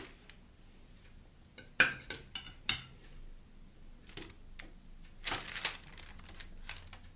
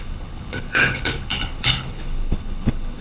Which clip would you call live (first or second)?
first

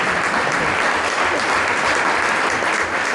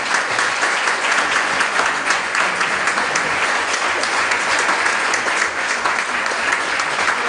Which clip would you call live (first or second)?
first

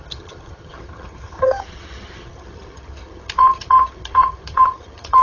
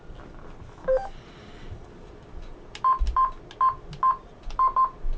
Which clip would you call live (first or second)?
second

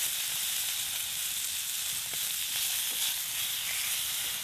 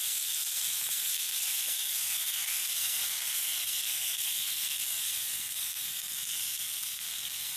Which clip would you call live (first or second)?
first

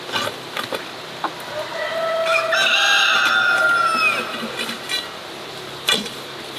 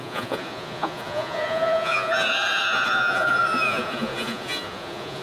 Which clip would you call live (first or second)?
first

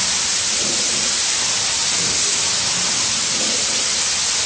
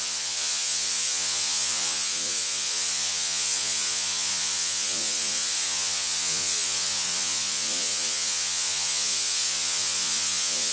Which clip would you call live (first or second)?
first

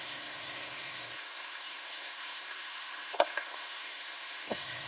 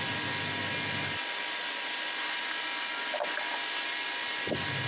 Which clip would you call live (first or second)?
second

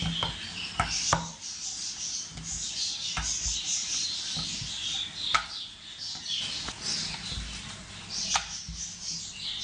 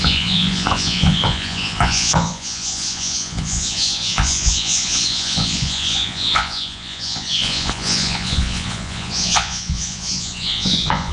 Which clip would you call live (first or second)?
first